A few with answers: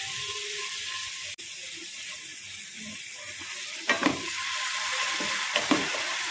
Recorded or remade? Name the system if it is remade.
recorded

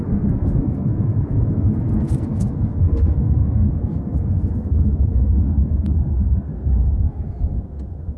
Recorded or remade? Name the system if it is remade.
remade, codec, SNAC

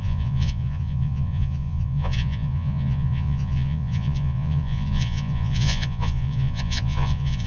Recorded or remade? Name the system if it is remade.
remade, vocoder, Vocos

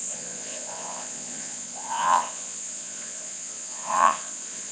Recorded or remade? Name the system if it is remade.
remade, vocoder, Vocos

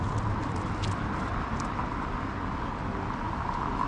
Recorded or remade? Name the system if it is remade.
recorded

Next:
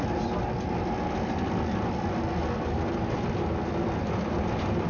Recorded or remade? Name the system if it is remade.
recorded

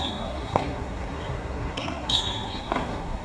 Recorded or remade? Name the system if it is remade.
remade, codec, SNAC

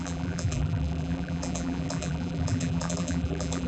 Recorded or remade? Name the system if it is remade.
remade, vocoder, BigVGAN v2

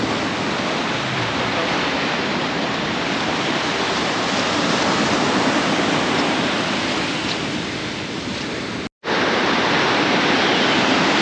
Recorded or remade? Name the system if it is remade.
recorded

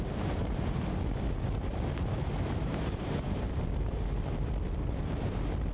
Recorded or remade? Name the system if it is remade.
remade, vocoder, BigVGAN v2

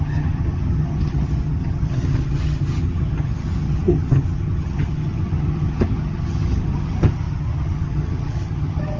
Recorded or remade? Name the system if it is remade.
remade, vocoder, HiFi-GAN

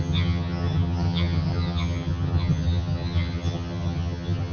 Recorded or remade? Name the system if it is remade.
remade, vocoder, HiFi-GAN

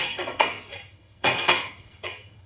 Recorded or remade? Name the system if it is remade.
remade, codec, SNAC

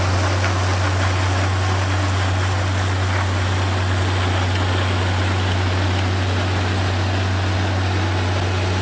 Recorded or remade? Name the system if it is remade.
recorded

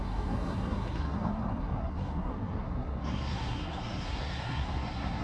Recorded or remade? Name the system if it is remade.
remade, codec, SNAC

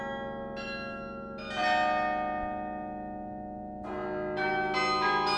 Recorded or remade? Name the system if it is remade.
recorded